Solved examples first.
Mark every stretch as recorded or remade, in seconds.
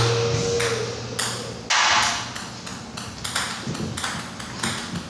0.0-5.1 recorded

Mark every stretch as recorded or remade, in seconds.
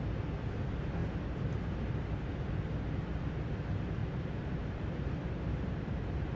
0.0-4.0 recorded; 4.0-6.4 remade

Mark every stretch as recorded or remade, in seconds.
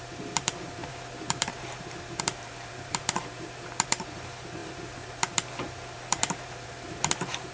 0.0-7.5 remade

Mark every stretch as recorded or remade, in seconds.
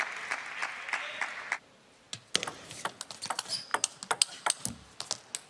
0.0-5.5 recorded